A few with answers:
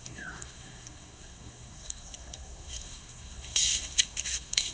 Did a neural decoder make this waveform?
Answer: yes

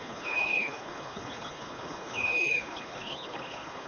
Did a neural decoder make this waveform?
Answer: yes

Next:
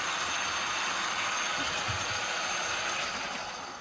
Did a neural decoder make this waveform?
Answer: no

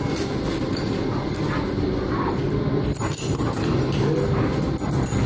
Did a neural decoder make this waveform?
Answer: no